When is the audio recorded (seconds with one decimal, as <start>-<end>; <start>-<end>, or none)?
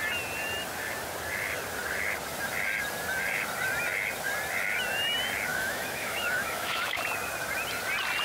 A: 0.0-5.5; 7.0-8.2